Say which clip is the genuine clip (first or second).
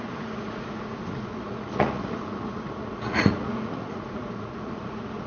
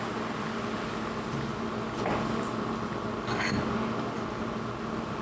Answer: second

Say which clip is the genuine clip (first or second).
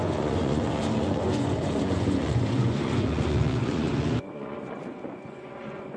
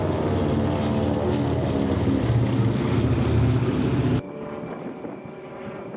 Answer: second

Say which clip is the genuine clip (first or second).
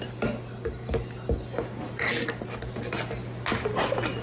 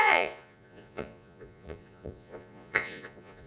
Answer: first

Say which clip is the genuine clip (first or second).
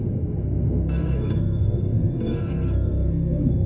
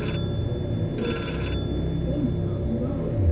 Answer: second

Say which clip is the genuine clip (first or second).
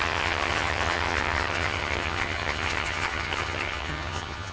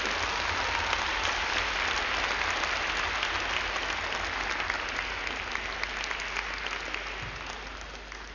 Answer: second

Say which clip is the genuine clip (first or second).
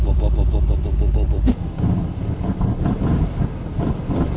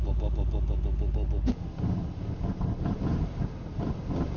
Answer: second